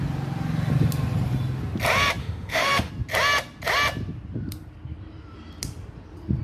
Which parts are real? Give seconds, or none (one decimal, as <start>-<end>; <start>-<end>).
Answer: 0.0-2.2; 2.9-6.4